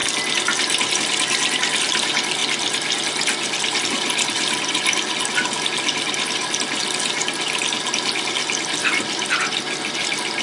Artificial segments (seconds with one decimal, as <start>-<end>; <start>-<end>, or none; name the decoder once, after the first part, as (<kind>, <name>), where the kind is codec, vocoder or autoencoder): 0.9-2.4 (vocoder, BigVGAN v2); 3.8-10.4